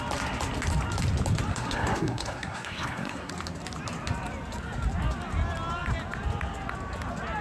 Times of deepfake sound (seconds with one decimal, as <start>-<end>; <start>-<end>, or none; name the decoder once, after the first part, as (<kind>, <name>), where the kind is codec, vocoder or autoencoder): 1.5-3.3 (codec, SNAC)